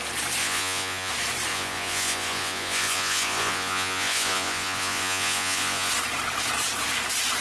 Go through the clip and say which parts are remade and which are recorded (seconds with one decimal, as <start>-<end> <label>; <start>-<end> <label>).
0.0-0.4 recorded; 0.4-1.1 remade; 1.1-1.5 recorded; 1.5-5.9 remade; 5.9-7.4 recorded